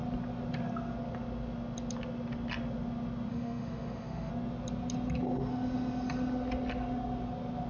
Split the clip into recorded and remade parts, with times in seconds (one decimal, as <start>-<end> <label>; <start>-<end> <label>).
0.0-3.3 recorded; 3.3-4.3 remade; 4.3-7.7 recorded